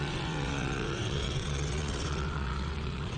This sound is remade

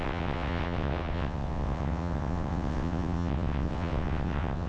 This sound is remade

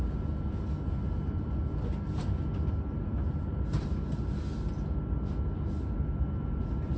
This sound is recorded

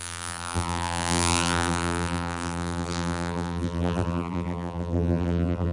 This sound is remade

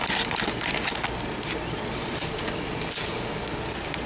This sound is recorded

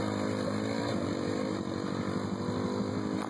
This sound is recorded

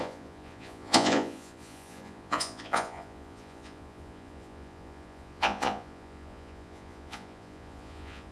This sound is remade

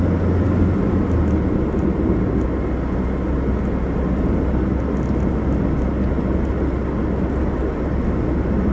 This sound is recorded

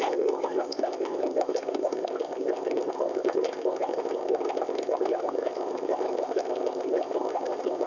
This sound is remade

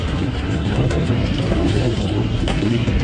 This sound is remade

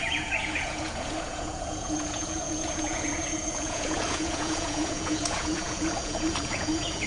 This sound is remade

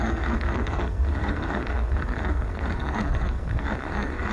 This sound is remade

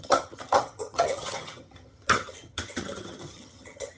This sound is remade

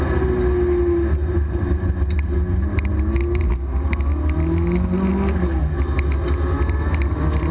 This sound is recorded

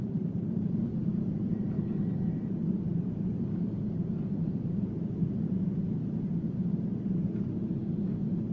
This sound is remade